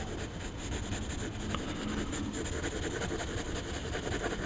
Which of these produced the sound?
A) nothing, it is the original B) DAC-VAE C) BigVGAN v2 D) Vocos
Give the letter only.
A